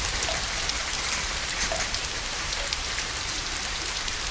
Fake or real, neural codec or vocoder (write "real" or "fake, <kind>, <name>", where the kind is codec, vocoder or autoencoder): fake, vocoder, BigVGAN v2